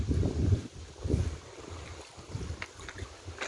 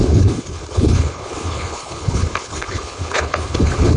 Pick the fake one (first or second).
second